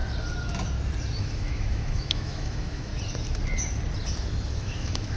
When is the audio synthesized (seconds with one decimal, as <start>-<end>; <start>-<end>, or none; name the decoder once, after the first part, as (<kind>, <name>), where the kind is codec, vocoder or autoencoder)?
1.2-2.9 (autoencoder, DAC-VAE); 4.5-5.2